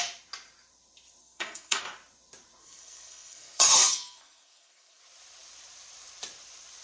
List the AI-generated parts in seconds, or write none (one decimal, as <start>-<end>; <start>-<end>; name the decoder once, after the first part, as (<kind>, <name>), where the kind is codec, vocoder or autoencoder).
1.2-1.8 (codec, SNAC); 2.6-5.0